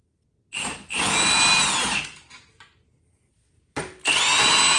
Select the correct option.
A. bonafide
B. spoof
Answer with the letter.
A